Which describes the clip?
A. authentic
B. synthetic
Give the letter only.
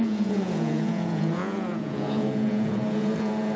B